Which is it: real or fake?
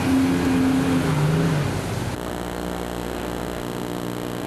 real